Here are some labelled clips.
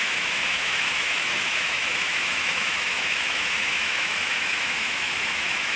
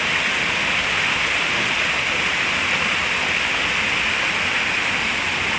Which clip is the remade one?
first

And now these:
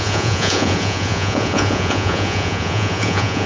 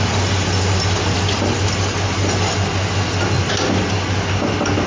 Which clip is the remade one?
first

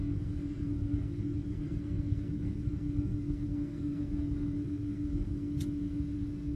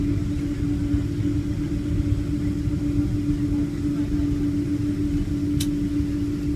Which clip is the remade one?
first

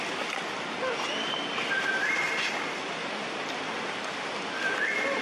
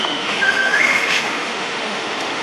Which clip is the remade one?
second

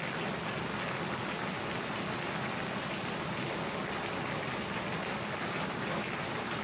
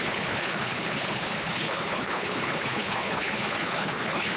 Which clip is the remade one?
second